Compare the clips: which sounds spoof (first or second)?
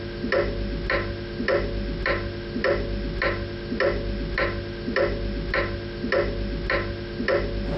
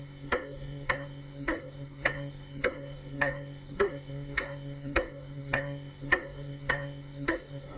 second